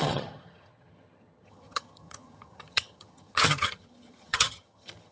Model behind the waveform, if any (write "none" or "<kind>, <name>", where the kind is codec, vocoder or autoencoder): vocoder, HiFi-GAN